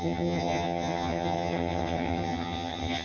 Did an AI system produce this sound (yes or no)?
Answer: yes